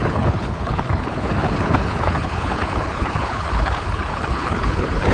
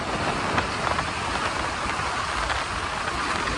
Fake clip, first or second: first